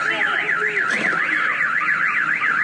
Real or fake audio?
real